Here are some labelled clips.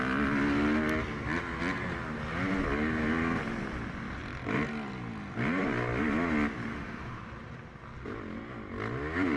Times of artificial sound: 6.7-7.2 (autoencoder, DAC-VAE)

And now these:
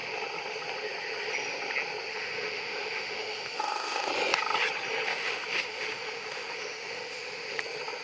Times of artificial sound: 2.1-4.1 (autoencoder, DAC-VAE); 5.1-7.6

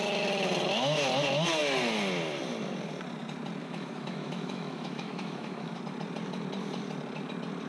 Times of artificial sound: 3.6-5.8 (autoencoder, DAC-VAE)

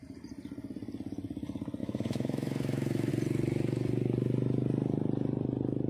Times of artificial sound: 1.8-3.1 (autoencoder, DAC-VAE)

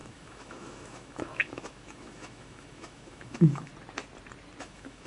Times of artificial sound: 0.0-3.7 (autoencoder, DAC-VAE); 4.6-5.1